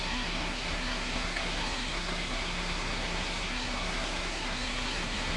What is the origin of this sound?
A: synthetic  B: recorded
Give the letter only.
A